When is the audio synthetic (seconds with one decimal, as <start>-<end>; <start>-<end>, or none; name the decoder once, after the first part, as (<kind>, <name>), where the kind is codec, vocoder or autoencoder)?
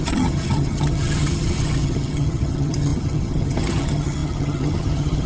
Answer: 0.0-5.3 (vocoder, HiFi-GAN)